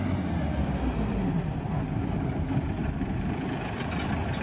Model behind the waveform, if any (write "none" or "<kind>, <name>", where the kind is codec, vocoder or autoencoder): none